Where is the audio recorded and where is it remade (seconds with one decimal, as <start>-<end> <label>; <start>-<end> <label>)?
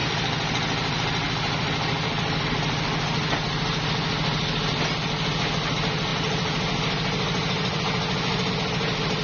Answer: 0.0-9.2 recorded